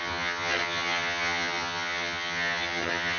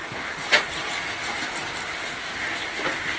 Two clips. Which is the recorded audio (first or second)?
second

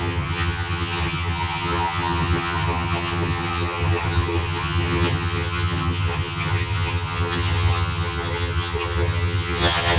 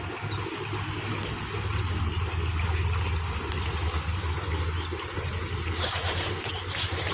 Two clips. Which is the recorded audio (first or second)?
second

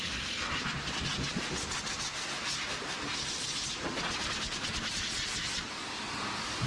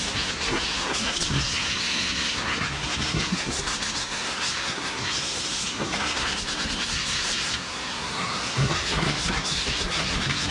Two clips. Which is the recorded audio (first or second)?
first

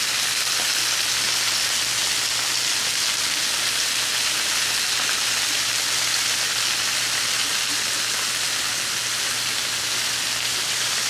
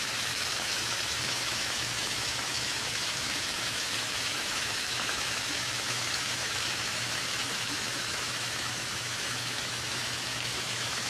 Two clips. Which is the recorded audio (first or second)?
first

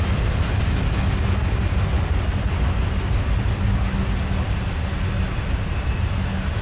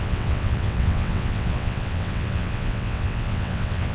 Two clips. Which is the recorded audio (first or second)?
first